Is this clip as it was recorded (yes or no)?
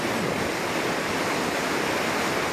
yes